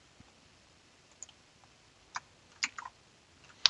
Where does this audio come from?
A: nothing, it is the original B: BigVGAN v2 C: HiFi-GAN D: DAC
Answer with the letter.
A